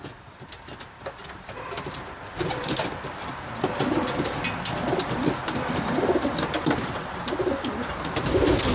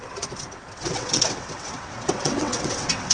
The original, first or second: first